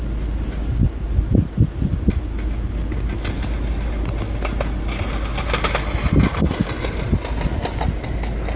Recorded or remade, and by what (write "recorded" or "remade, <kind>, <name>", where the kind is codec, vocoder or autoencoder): recorded